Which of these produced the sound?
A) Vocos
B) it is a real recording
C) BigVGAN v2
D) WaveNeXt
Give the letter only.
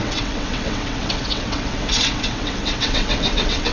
D